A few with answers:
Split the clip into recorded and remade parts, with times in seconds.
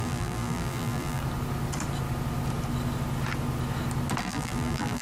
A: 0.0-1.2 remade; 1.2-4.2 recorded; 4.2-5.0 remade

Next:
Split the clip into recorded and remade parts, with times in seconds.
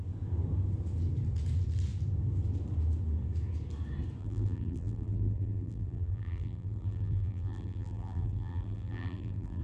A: 0.0-4.2 recorded; 4.2-9.6 remade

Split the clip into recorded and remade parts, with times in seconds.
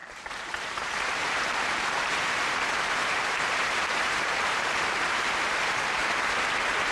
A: 0.0-6.0 remade; 6.0-6.9 recorded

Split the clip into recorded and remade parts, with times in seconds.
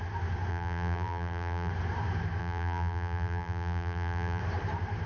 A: 0.0-0.5 recorded; 0.5-1.7 remade; 1.7-2.4 recorded; 2.4-4.4 remade; 4.4-5.1 recorded